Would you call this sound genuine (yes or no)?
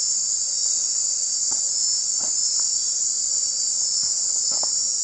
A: yes